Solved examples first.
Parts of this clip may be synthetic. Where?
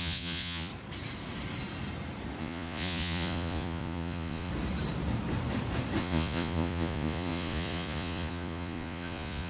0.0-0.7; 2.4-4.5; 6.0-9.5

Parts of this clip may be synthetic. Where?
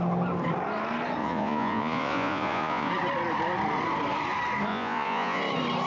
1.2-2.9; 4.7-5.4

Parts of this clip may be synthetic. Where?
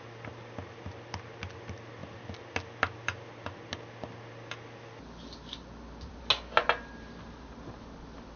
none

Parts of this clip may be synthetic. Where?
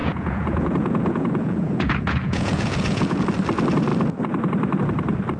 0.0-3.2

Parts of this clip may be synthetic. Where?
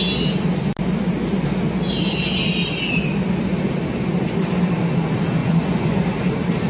5.4-6.0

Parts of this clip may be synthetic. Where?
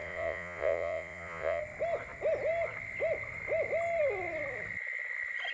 0.0-1.6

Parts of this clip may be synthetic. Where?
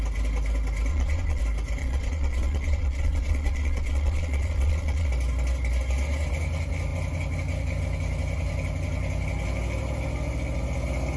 0.9-1.4; 1.8-5.1